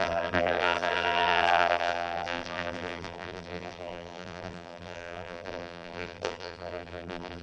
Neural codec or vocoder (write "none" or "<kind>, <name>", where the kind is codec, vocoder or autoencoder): vocoder, BigVGAN v2